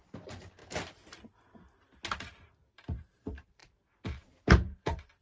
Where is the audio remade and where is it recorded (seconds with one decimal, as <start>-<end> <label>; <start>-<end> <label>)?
0.0-0.6 remade; 0.6-2.7 recorded; 2.7-5.2 remade